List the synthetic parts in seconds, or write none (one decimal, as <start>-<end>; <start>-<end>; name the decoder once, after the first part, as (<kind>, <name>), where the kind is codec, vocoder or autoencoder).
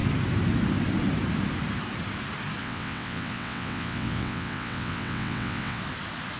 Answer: 2.6-5.8 (vocoder, WaveNeXt)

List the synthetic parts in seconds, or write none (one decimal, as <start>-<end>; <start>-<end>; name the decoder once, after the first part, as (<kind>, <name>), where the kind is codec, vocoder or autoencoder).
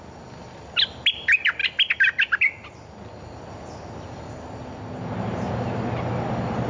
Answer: none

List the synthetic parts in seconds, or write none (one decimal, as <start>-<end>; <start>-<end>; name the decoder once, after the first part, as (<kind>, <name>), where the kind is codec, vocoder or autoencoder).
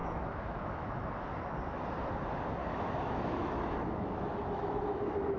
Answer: 0.0-1.3 (autoencoder, DAC-VAE); 2.6-5.4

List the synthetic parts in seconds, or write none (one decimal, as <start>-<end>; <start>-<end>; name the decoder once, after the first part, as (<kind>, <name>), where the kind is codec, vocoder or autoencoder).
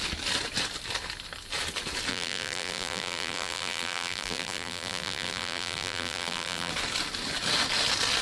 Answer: 2.1-6.7 (vocoder, BigVGAN v2)